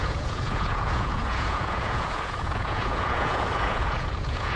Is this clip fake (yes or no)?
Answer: yes